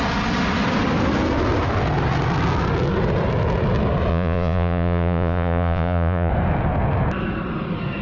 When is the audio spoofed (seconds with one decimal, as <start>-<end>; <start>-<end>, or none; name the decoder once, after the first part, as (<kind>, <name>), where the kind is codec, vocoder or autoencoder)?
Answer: 4.1-6.3 (vocoder, Vocos)